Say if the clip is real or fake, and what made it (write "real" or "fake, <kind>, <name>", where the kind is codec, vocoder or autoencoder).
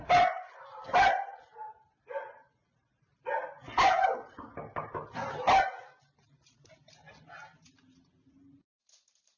real